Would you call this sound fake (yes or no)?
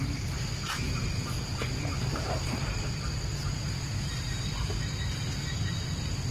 yes